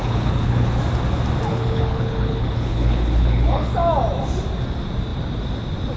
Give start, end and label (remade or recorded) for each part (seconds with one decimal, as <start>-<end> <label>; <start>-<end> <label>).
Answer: 0.0-0.8 remade; 0.8-1.5 recorded; 1.5-3.7 remade; 3.7-6.0 recorded